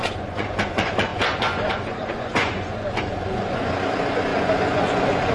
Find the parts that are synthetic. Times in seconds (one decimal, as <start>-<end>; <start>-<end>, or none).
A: 0.0-5.3